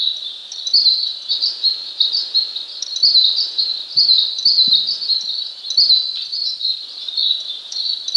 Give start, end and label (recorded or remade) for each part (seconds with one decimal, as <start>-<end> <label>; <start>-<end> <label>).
0.0-0.4 remade; 0.4-3.6 recorded; 3.6-4.5 remade; 4.5-6.1 recorded; 6.1-8.2 remade